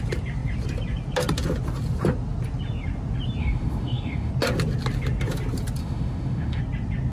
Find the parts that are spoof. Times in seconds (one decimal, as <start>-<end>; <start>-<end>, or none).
3.4-4.3; 5.8-6.6